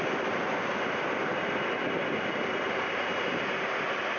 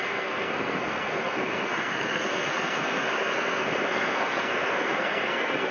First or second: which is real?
first